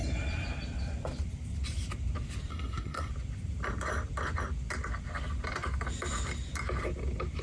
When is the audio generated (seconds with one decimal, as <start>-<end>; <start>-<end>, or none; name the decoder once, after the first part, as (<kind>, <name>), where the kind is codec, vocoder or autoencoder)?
2.5-3.1 (codec, SNAC)